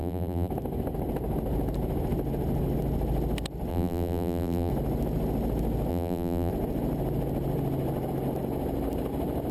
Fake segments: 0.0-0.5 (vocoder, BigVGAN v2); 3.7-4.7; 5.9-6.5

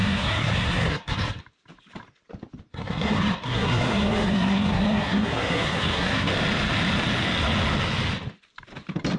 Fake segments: 0.0-1.4 (codec, SNAC); 2.7-6.3

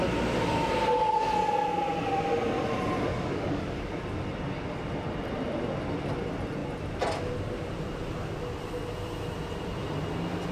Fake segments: 3.1-3.9 (codec, DAC)

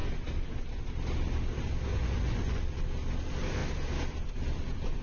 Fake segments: 1.9-2.6 (vocoder, Vocos)

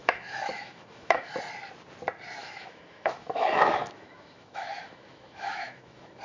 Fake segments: 0.0-1.3 (autoencoder, DAC-VAE); 2.4-6.2

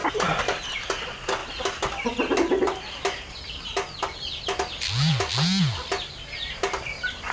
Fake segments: 0.0-0.8 (vocoder, BigVGAN v2)

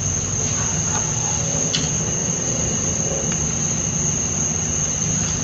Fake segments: 2.2-3.1 (vocoder, BigVGAN v2)